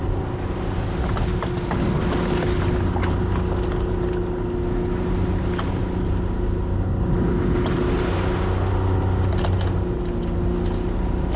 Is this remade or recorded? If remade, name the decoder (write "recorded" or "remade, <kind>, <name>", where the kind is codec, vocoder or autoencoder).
recorded